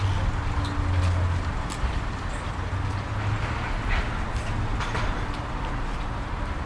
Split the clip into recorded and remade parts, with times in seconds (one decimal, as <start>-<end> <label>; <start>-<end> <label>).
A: 0.0-6.7 recorded